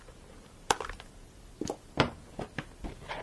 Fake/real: real